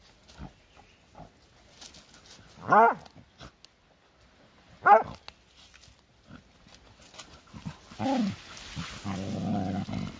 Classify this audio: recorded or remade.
recorded